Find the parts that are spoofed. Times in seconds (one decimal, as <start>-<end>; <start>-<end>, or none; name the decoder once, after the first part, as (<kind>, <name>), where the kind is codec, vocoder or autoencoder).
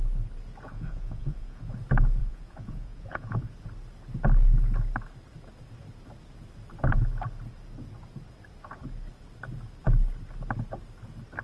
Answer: 0.7-1.7 (vocoder, Vocos); 2.2-3.5